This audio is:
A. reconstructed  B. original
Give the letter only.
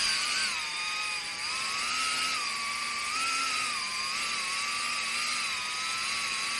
B